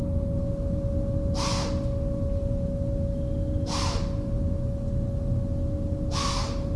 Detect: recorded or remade recorded